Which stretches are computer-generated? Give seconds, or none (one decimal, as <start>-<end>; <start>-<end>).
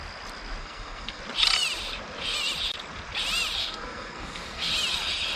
0.6-1.2; 3.6-4.7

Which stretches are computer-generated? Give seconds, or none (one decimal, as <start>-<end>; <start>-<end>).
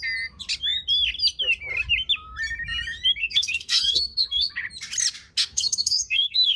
3.2-4.5; 5.4-6.6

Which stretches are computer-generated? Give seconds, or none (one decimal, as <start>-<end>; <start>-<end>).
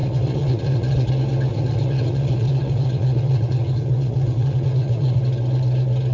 0.0-1.1; 1.5-5.2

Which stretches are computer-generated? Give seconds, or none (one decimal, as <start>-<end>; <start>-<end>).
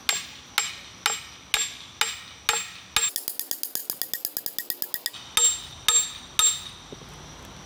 none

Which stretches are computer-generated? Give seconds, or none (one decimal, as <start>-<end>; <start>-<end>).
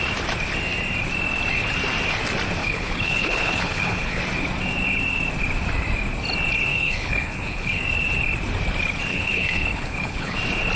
2.6-4.2; 6.7-7.8; 9.1-10.4